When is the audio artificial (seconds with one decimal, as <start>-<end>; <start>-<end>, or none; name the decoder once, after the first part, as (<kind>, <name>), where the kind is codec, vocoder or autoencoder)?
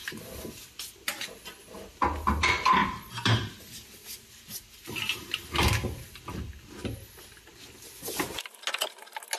0.0-0.5 (vocoder, BigVGAN v2); 2.8-6.5